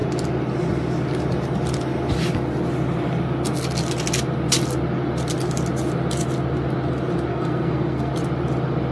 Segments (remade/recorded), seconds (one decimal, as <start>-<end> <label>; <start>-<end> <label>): 0.0-7.3 recorded; 7.3-8.1 remade; 8.1-8.9 recorded